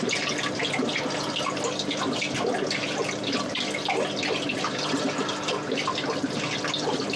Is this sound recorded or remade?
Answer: recorded